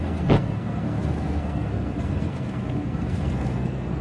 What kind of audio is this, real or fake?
fake